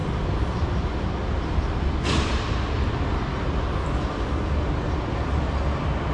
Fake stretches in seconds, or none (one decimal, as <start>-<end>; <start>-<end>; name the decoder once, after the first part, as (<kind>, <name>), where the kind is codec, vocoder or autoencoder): none